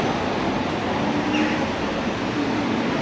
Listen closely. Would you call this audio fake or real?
real